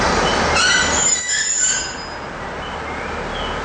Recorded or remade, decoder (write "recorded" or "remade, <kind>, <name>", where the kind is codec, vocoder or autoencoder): recorded